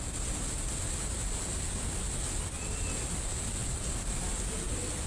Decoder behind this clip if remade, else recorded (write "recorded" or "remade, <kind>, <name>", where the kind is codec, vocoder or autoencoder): recorded